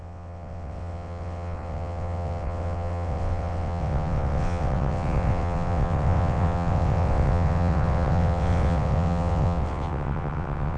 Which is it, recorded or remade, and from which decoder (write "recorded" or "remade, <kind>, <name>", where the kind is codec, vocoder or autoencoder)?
remade, vocoder, WaveNeXt